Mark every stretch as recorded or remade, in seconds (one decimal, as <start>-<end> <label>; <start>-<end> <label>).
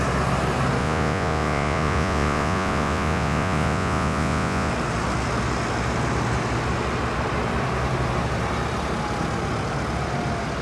0.0-0.8 recorded; 0.8-4.7 remade; 4.7-10.6 recorded